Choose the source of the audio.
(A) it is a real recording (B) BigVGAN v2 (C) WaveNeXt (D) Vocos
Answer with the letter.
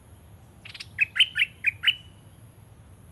A